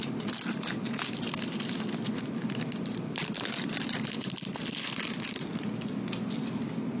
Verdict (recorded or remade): recorded